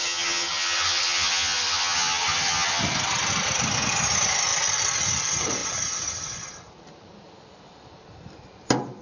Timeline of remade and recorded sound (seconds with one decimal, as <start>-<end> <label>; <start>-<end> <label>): 0.0-2.8 remade; 2.8-9.0 recorded